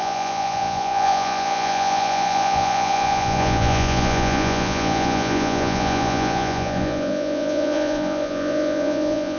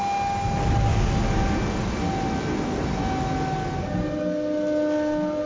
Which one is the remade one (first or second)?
first